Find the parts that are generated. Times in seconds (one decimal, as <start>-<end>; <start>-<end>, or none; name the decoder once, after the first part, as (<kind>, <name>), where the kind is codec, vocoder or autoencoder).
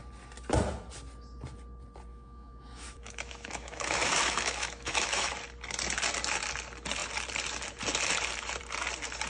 2.1-5.3 (autoencoder, DAC-VAE)